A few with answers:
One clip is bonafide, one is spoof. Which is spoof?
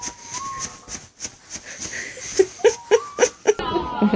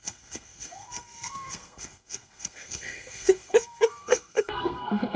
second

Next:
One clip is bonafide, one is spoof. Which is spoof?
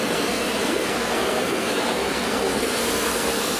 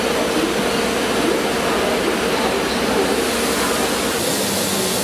first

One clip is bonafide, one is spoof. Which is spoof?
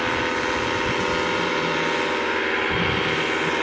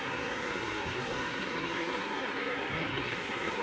second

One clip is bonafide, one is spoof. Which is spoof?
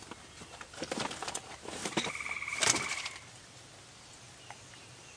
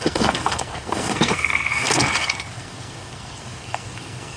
second